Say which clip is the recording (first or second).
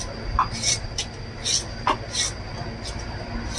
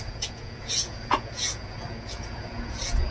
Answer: first